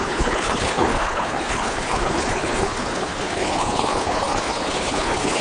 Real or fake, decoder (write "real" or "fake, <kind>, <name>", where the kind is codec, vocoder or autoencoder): fake, codec, HILCodec